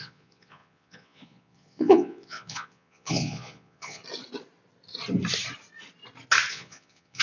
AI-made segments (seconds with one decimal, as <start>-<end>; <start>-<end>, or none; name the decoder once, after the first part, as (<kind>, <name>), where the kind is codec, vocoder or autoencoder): 0.0-4.0 (vocoder, Vocos); 6.5-7.2